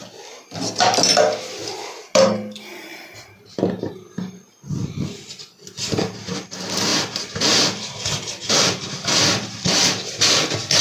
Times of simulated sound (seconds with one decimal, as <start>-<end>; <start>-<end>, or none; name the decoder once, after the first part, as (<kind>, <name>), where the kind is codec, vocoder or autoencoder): 2.9-3.9 (vocoder, BigVGAN v2)